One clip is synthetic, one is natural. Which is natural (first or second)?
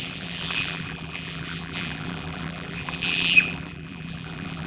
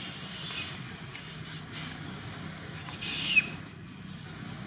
second